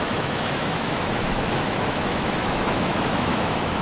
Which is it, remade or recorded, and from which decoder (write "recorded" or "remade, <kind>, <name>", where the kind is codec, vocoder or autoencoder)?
remade, autoencoder, DAC-VAE